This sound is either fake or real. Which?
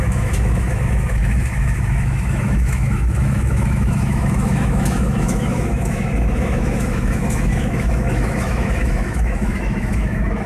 fake